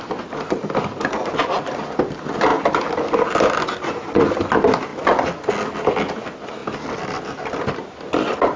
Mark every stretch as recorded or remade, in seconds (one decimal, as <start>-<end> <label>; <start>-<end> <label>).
0.0-8.6 recorded